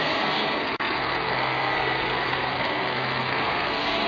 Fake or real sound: fake